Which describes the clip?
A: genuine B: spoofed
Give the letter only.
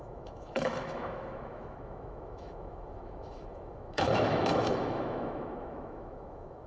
B